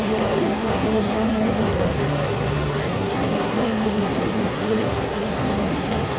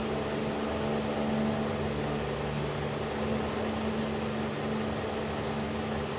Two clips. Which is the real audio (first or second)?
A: second